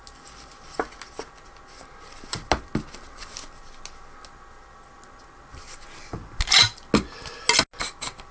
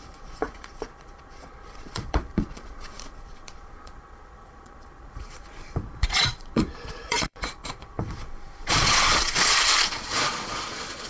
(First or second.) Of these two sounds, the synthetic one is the second